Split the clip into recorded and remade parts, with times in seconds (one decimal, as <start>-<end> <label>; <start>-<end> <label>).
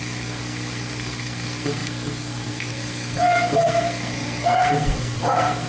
0.0-5.7 remade